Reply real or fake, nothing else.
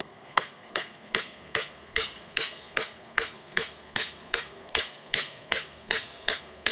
fake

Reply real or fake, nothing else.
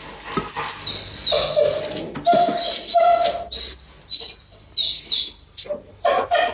real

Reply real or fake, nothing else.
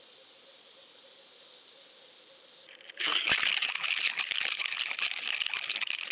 real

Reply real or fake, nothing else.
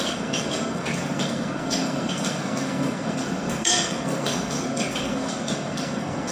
fake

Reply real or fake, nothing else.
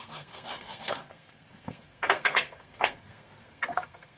fake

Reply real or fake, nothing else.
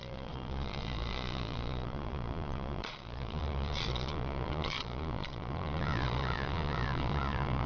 fake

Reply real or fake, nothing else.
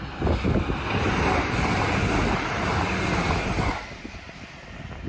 real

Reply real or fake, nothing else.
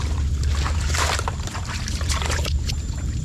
fake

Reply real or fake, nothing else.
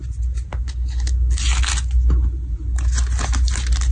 real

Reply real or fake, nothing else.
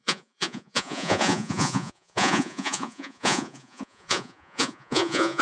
fake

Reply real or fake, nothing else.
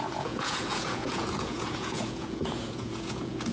fake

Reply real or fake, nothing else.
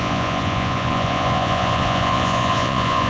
fake